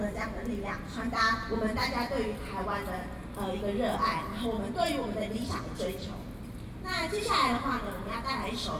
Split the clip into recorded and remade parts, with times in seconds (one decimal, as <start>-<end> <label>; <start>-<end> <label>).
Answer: 0.0-8.8 recorded